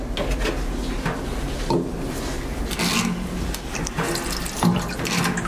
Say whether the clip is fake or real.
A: real